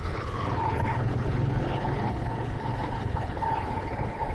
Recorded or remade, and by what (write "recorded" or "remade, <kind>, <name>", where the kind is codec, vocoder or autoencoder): remade, codec, HILCodec